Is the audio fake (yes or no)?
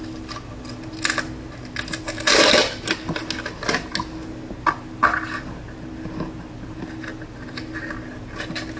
no